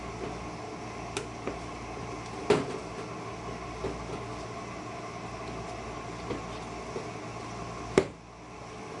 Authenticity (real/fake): real